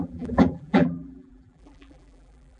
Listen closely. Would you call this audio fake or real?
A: fake